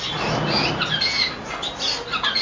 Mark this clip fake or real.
real